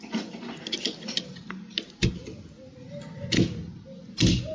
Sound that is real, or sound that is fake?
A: real